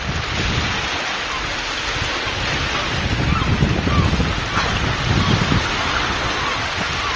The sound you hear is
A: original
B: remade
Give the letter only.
A